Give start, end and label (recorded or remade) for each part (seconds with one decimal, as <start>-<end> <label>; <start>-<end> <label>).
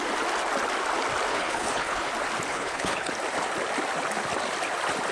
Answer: 0.0-1.3 recorded; 1.3-2.1 remade; 2.1-2.5 recorded; 2.5-3.1 remade; 3.1-5.1 recorded